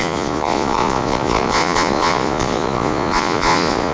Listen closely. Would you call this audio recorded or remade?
remade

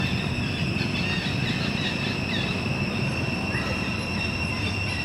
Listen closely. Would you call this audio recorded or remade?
recorded